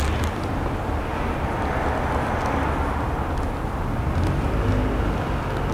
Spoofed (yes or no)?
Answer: no